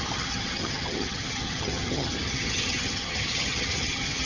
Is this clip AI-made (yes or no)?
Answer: yes